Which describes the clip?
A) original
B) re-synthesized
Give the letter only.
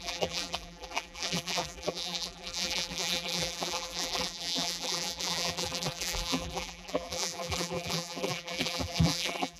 B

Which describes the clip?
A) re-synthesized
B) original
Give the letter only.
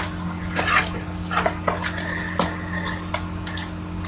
B